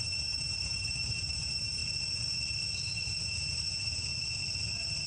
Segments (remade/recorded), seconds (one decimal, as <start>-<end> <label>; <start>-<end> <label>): 0.0-1.8 remade; 1.8-3.2 recorded; 3.2-4.1 remade; 4.1-5.1 recorded